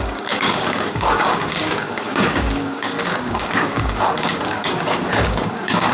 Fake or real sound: fake